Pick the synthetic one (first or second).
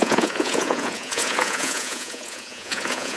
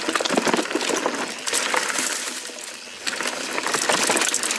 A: first